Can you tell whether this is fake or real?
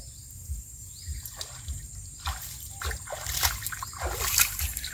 real